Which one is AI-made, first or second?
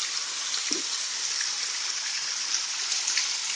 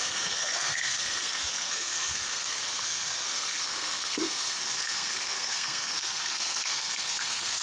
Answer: second